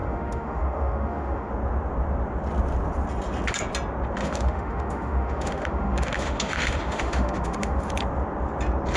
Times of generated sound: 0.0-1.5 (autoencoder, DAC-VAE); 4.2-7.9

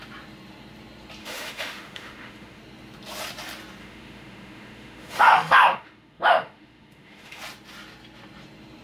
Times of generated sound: 1.2-2.6 (autoencoder, DAC-VAE); 3.8-7.4

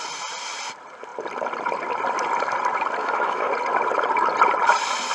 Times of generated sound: 3.0-3.5 (autoencoder, DAC-VAE)

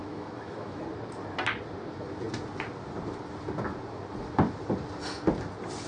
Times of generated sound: 0.0-0.8 (autoencoder, DAC-VAE)